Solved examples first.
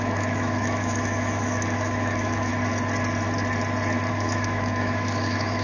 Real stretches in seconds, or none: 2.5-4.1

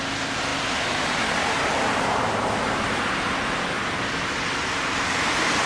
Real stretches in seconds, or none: 0.0-5.7

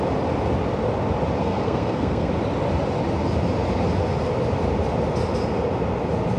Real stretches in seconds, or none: 0.0-1.4; 2.3-6.4

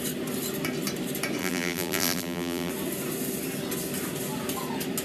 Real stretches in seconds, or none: 0.0-1.4; 2.7-5.0

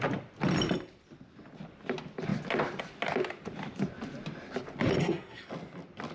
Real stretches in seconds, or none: 0.0-5.0; 5.5-6.1

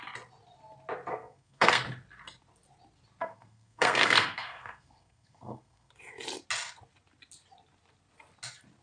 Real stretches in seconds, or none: 0.0-1.1; 1.8-3.2; 5.9-8.8

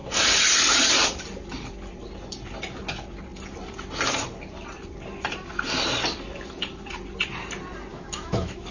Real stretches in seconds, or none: 0.0-7.9

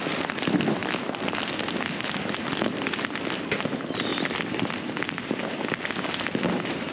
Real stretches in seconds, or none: 0.0-6.9